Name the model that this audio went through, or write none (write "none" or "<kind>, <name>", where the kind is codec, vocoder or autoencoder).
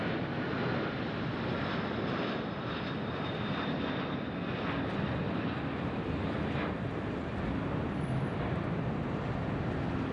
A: none